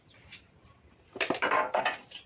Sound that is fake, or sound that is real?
real